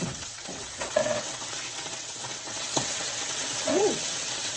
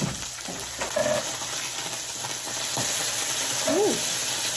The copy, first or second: first